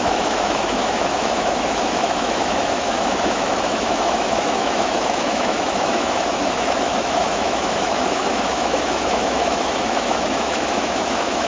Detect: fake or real fake